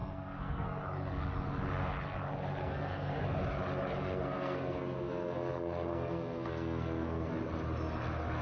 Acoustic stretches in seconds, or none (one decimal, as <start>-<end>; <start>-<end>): 0.8-2.6; 3.2-4.0; 7.3-8.4